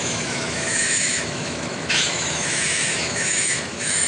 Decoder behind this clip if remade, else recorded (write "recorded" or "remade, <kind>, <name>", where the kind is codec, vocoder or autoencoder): remade, autoencoder, DAC-VAE